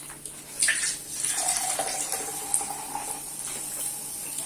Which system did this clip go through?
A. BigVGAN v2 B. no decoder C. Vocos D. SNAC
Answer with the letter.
B